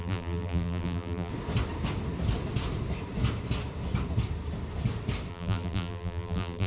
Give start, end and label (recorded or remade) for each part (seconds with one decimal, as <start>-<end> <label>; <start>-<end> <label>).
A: 0.0-1.3 remade; 1.3-5.3 recorded; 5.3-6.7 remade